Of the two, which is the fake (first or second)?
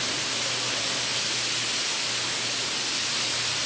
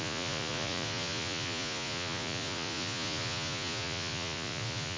second